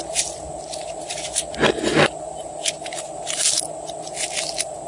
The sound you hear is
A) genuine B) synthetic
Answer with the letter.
A